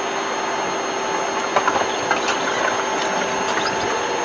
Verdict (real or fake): real